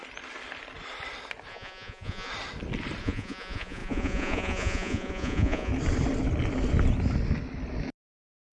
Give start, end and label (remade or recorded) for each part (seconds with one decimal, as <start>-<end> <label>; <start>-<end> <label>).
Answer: 0.0-1.5 recorded; 1.5-2.3 remade; 2.3-3.0 recorded; 3.0-5.7 remade; 5.7-8.5 recorded